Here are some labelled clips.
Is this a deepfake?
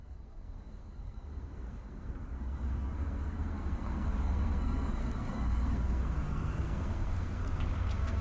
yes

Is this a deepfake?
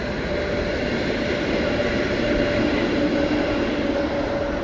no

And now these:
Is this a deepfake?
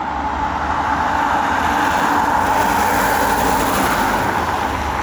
no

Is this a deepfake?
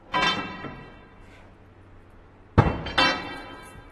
no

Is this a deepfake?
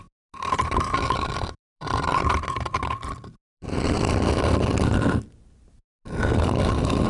yes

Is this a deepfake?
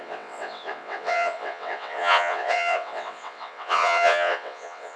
yes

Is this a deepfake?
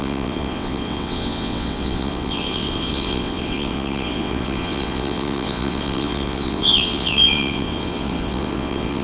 yes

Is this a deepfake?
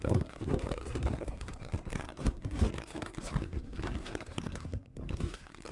yes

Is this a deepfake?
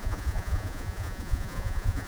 yes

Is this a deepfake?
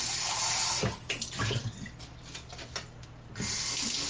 no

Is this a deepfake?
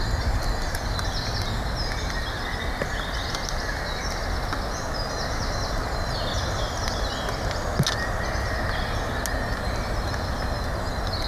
no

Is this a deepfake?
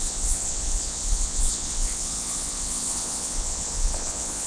yes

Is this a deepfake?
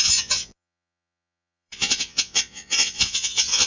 yes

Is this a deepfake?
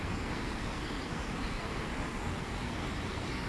yes